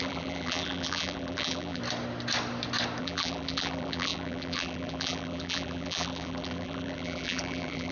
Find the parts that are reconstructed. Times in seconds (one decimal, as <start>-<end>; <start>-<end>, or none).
0.0-1.8; 3.0-7.9